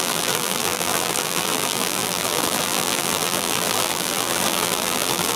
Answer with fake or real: fake